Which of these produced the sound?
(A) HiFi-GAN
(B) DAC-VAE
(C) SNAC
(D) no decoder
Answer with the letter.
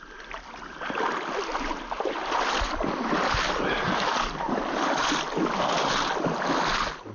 D